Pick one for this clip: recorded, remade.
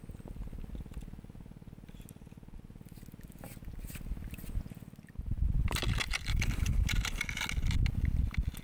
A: recorded